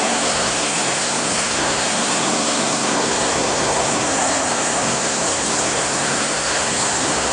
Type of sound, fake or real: fake